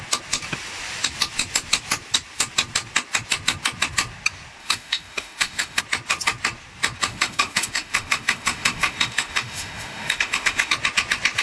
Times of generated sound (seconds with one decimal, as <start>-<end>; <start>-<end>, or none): 4.6-5.8; 7.1-10.7